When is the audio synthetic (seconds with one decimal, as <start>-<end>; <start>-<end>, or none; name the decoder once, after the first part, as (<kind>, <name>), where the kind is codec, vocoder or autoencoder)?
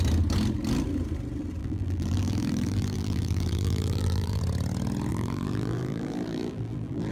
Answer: 1.6-4.4 (vocoder, BigVGAN v2); 5.1-7.1